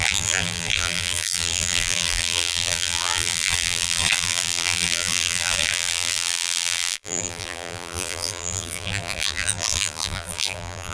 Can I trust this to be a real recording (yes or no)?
no